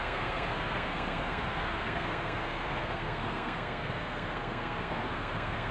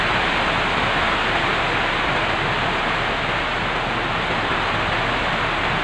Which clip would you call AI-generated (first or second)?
first